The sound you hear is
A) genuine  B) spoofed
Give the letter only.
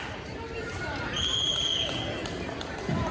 B